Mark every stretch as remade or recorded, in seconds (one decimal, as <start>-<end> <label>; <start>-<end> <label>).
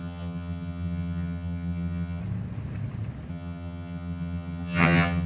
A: 0.0-2.2 remade; 2.2-3.3 recorded; 3.3-5.3 remade